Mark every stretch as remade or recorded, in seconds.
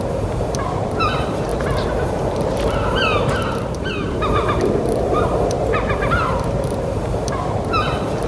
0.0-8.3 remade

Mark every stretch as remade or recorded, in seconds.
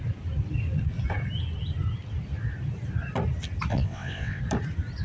0.0-3.7 recorded; 3.7-4.4 remade; 4.4-5.0 recorded